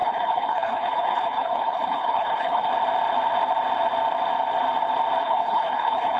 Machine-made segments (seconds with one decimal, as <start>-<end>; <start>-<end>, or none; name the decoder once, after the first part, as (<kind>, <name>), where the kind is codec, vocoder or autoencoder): 0.0-2.7 (codec, HILCodec); 5.2-6.2